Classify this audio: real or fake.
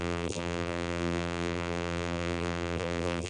fake